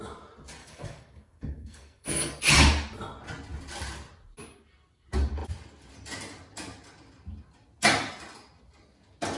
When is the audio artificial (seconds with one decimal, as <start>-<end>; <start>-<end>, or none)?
0.6-2.4